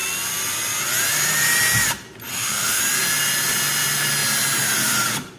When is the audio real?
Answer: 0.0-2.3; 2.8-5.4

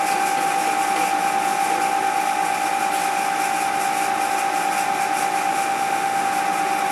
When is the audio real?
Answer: 0.0-5.5; 6.2-6.9

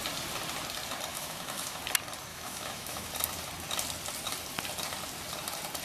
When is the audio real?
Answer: 0.0-1.1; 1.8-2.3; 3.1-5.8

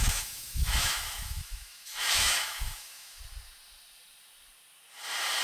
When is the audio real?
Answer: 3.2-5.4

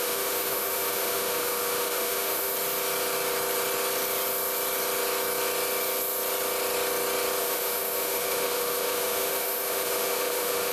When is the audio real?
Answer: 2.5-7.4

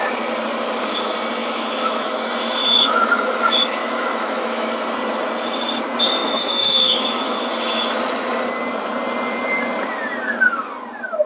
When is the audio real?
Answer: 0.0-1.4; 2.2-2.6; 3.4-3.8; 4.7-6.2; 7.5-11.3

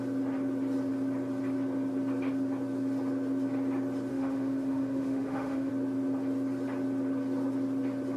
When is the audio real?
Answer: 0.0-4.1; 5.7-8.2

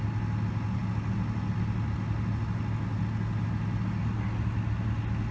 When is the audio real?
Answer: 0.0-5.3